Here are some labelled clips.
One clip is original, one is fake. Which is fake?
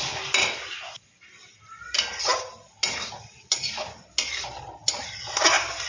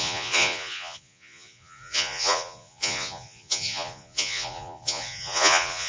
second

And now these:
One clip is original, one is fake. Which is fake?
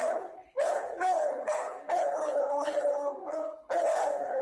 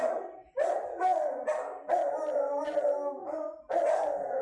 first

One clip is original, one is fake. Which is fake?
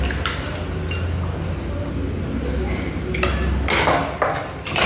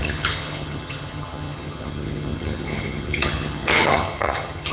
second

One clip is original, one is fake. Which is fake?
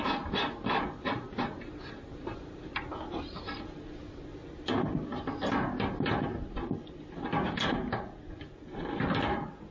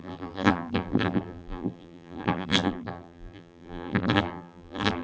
second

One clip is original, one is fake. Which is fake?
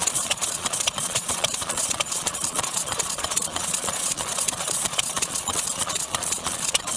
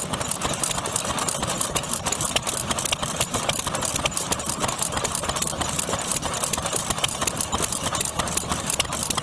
first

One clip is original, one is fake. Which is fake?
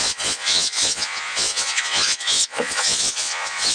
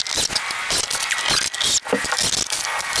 first